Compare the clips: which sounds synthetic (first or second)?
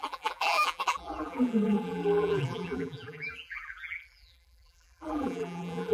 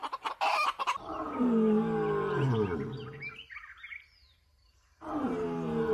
first